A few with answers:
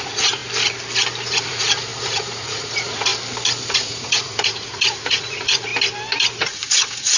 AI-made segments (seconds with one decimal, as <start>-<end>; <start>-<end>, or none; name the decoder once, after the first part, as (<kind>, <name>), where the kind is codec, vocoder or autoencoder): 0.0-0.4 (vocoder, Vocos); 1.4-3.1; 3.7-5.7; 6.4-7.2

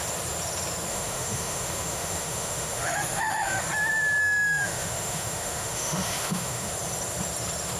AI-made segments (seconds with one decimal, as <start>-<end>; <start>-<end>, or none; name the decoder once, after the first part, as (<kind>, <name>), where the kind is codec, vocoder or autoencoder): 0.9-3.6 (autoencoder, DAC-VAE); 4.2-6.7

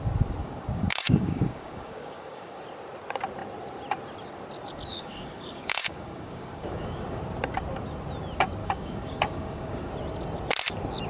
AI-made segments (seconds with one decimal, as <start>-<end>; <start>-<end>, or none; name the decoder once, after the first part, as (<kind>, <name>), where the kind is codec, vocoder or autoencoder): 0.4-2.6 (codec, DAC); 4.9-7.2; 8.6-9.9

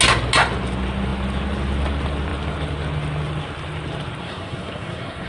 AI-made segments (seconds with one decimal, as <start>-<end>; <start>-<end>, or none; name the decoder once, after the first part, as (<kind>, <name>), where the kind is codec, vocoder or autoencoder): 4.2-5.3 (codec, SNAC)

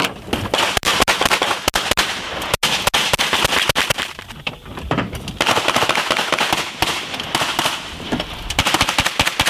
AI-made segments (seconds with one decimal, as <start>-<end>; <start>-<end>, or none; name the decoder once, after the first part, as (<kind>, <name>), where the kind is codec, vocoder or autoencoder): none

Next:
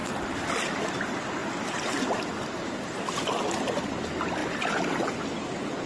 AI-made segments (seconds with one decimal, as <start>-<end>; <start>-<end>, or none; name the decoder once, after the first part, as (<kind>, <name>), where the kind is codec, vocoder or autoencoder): 0.7-4.4 (vocoder, BigVGAN v2); 5.1-5.9

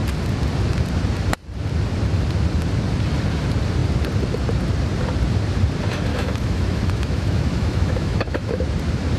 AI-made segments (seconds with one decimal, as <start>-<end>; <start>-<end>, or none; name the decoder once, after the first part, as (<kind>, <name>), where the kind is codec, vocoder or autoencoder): 6.1-8.6 (autoencoder, DAC-VAE)